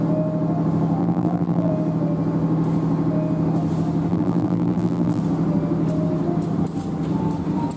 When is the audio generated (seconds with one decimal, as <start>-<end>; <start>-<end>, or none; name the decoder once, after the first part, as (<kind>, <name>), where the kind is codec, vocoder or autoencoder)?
1.0-1.7 (vocoder, BigVGAN v2); 4.1-5.2